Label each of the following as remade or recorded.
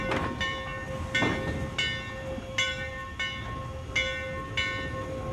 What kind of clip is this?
recorded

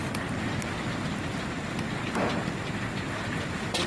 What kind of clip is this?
recorded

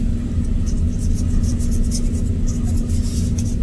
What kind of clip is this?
recorded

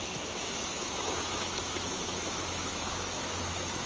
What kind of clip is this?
remade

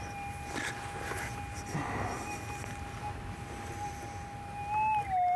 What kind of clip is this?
recorded